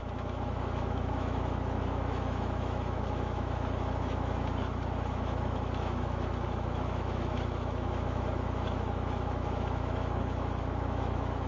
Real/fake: fake